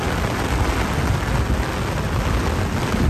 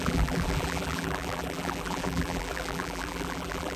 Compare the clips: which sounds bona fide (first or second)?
first